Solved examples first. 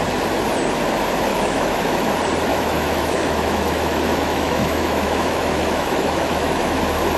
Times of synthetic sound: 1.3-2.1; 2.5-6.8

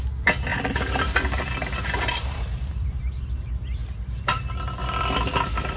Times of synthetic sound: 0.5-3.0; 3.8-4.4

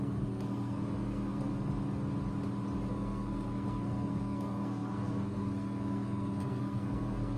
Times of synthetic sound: 0.0-1.5; 2.9-7.4

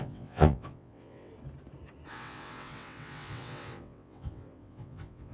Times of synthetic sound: 0.0-1.3; 2.1-5.3

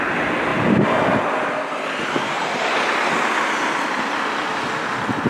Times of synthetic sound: none

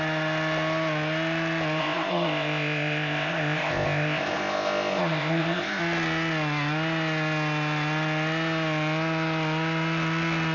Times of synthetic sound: 1.8-5.8